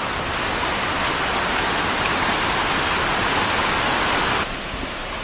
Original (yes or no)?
yes